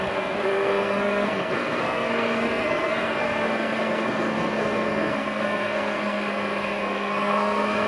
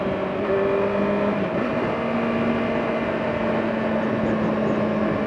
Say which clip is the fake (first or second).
first